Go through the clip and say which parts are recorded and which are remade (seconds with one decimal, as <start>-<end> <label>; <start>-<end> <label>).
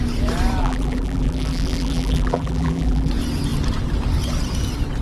0.0-0.6 recorded; 0.6-3.1 remade; 3.1-5.0 recorded